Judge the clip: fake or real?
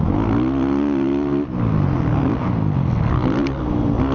real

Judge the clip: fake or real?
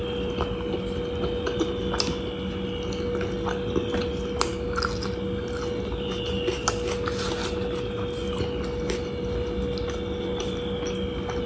real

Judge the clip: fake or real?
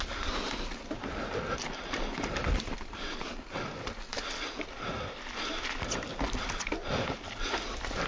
real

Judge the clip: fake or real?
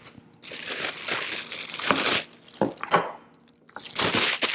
real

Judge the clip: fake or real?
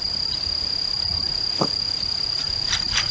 real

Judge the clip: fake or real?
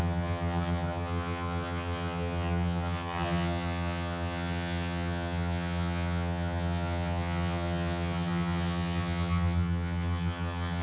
fake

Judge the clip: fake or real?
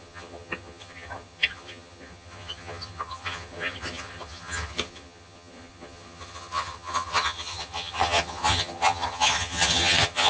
fake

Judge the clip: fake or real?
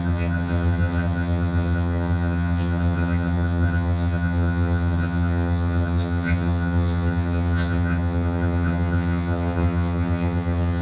fake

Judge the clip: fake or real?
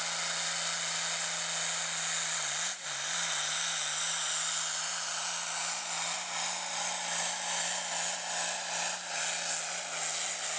real